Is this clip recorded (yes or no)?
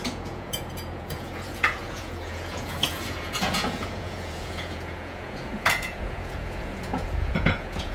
no